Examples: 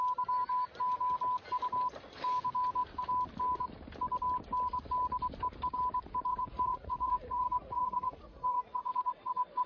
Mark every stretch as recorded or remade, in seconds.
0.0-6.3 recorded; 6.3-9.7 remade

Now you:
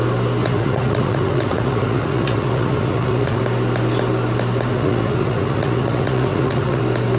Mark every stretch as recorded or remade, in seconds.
0.0-0.4 recorded; 0.4-3.4 remade; 3.4-4.7 recorded; 4.7-6.8 remade; 6.8-7.2 recorded

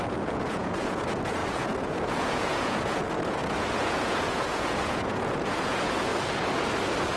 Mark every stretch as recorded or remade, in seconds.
0.0-6.1 remade; 6.1-7.2 recorded

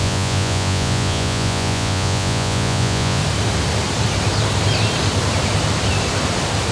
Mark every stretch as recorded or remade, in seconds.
0.0-3.2 remade; 3.2-6.7 recorded

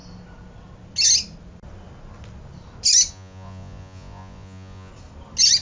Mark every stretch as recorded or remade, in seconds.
0.0-3.1 recorded; 3.1-4.9 remade; 4.9-5.6 recorded

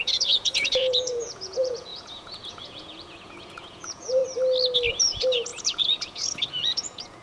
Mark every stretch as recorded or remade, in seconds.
0.0-4.2 remade; 4.2-4.9 recorded; 4.9-7.2 remade